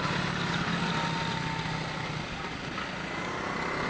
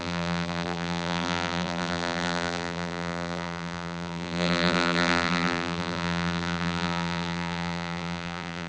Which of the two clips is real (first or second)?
first